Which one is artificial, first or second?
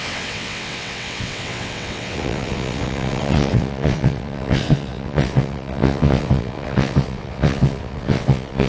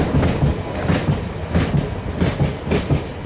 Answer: first